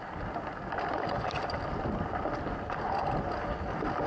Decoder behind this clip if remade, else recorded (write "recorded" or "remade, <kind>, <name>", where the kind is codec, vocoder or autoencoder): recorded